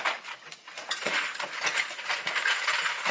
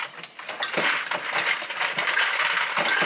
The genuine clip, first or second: second